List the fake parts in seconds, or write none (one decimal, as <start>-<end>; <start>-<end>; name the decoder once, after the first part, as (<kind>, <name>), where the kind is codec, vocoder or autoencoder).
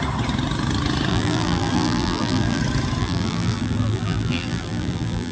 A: 1.1-2.6 (vocoder, BigVGAN v2); 3.0-5.3